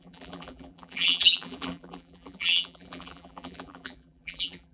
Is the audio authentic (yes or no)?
no